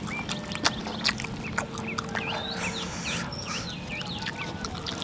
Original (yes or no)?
yes